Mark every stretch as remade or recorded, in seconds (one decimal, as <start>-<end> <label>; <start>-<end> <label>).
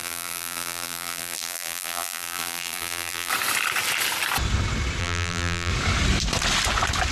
0.0-3.3 remade; 3.3-5.0 recorded; 5.0-5.7 remade; 5.7-7.1 recorded